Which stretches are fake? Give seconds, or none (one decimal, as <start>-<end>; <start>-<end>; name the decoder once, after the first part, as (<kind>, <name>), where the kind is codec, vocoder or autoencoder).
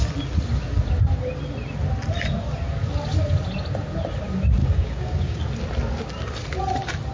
4.6-5.4 (codec, DAC)